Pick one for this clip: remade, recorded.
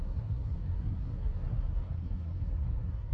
remade